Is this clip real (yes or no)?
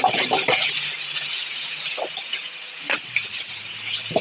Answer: yes